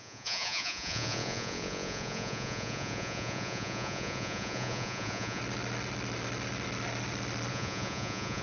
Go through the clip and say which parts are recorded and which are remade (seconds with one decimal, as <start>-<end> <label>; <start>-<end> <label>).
0.0-5.4 remade; 5.4-7.5 recorded; 7.5-8.4 remade